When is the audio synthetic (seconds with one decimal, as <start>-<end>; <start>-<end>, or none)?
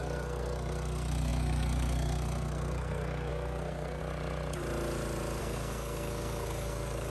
0.0-4.0; 5.4-7.1